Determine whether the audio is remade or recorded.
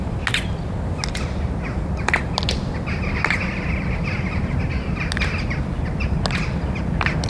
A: recorded